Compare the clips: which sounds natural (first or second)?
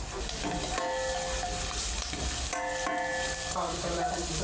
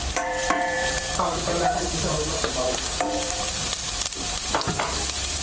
first